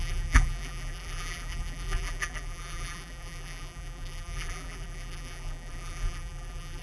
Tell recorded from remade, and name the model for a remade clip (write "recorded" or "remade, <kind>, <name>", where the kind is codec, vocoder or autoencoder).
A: remade, vocoder, BigVGAN v2